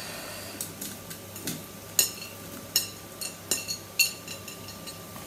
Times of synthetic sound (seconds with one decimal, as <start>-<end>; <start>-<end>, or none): none

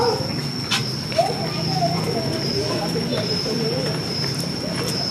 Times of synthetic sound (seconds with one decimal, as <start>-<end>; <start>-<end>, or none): 3.1-4.6

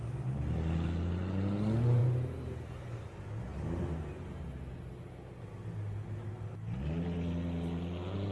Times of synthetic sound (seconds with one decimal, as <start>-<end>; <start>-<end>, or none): 2.0-2.7